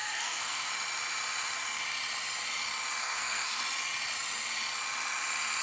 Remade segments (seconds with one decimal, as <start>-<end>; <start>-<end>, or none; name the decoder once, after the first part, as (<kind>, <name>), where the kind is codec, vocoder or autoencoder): 0.0-0.7 (codec, SNAC); 3.0-3.6